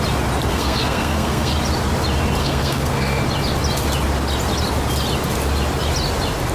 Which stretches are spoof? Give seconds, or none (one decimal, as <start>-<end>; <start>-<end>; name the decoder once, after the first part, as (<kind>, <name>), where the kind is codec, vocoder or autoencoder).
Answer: 0.5-1.5 (codec, SNAC); 2.4-3.2